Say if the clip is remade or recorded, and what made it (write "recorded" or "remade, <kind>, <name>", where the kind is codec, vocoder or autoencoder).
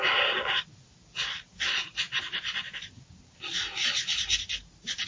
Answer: recorded